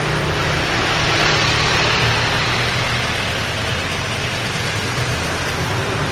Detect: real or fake real